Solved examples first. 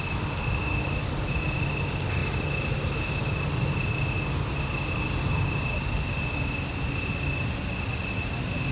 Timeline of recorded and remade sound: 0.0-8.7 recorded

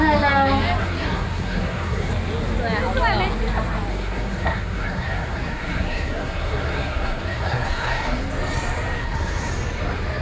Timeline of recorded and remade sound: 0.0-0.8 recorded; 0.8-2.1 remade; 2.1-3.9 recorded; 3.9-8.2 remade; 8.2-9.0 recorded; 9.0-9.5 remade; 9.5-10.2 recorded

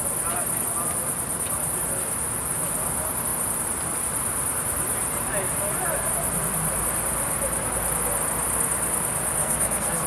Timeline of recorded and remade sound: 0.0-9.4 recorded; 9.4-10.1 remade

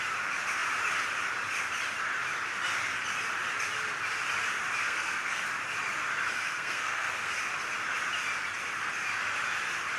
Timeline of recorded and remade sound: 0.0-4.8 recorded; 4.8-5.4 remade; 5.4-6.3 recorded; 6.3-7.3 remade; 7.3-10.0 recorded

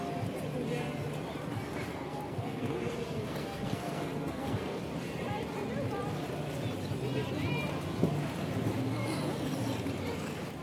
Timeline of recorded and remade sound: 0.0-1.9 recorded; 1.9-4.8 remade; 4.8-10.6 recorded

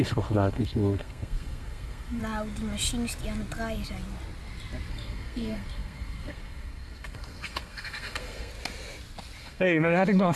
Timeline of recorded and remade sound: 0.0-2.2 remade; 2.2-4.9 recorded; 4.9-8.5 remade; 8.5-9.4 recorded; 9.4-10.3 remade